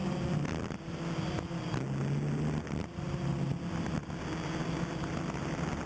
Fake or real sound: real